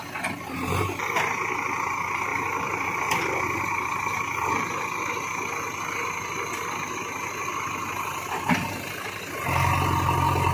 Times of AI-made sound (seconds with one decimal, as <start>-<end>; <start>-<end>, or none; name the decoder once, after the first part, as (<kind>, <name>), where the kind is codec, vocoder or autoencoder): 2.3-4.7 (vocoder, BigVGAN v2)